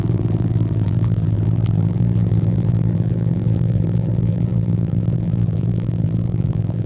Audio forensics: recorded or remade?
remade